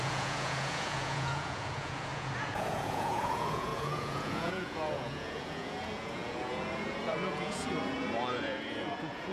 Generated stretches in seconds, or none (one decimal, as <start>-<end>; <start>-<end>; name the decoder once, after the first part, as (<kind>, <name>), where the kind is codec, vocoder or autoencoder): 0.0-9.3 (vocoder, Vocos)